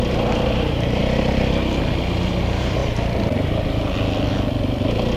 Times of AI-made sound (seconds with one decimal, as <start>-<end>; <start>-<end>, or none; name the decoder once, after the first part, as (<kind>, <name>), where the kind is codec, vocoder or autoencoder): 0.0-1.0 (vocoder, BigVGAN v2); 2.4-2.8